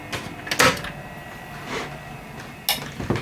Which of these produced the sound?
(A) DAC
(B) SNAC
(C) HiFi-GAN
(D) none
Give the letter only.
D